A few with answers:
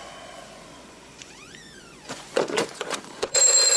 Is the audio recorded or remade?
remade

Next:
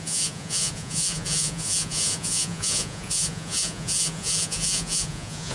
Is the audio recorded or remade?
remade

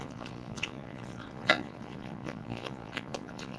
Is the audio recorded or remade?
remade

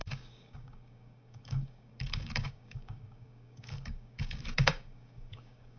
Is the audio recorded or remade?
remade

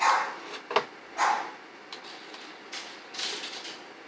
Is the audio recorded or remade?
recorded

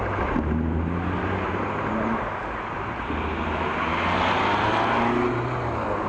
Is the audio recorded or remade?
recorded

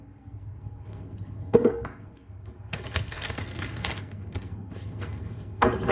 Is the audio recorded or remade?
remade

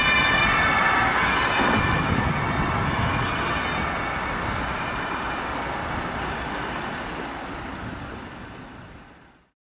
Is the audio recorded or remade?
recorded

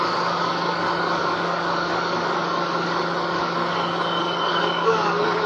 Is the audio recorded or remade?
remade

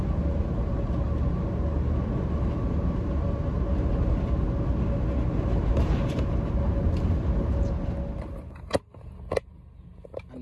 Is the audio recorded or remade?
recorded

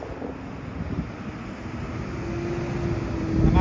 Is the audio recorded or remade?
recorded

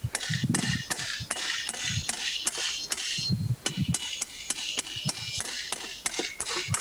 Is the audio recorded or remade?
recorded